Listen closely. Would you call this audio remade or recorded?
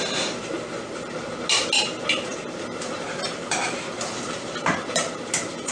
recorded